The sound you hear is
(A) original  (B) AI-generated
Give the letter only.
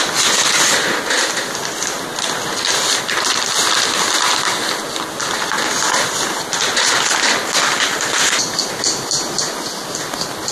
A